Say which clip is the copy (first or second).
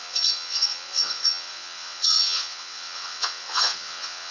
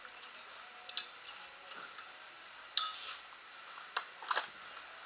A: first